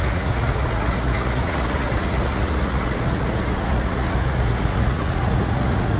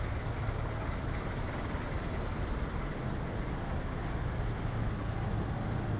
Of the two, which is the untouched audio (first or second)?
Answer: second